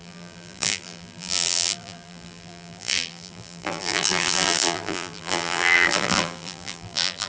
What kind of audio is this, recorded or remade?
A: remade